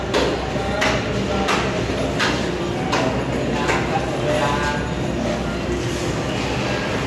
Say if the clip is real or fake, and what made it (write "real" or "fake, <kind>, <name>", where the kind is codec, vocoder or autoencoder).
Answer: real